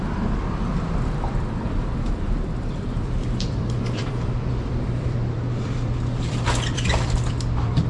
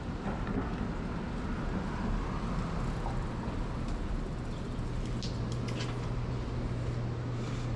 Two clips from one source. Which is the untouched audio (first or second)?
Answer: second